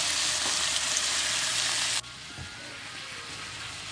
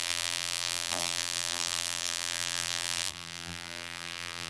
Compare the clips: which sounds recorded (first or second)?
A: first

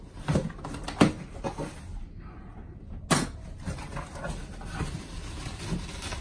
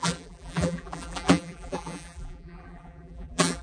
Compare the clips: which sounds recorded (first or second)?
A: first